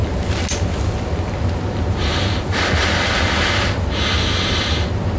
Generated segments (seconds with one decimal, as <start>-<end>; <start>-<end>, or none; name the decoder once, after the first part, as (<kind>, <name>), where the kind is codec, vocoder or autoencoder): none